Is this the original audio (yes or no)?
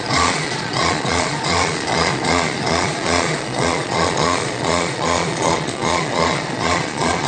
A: no